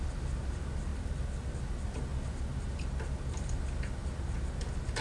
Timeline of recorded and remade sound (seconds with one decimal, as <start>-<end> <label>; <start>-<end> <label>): 0.0-5.0 recorded